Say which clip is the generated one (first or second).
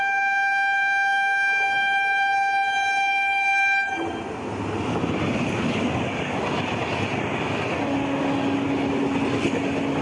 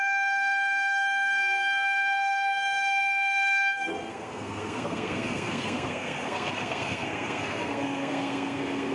second